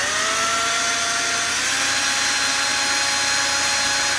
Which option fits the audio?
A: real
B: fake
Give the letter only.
A